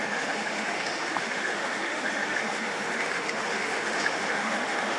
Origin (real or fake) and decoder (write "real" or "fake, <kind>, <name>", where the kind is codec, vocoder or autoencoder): fake, autoencoder, DAC-VAE